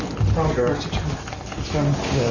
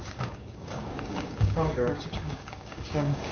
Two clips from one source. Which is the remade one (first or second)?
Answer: second